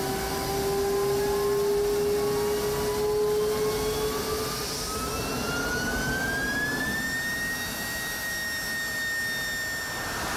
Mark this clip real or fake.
real